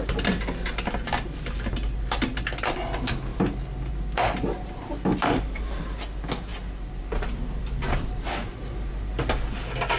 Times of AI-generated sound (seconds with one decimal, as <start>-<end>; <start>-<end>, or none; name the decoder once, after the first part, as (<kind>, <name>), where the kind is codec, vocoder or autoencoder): 5.1-5.8 (vocoder, BigVGAN v2); 6.5-8.9